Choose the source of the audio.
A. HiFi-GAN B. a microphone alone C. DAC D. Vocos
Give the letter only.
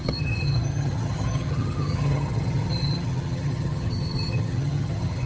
A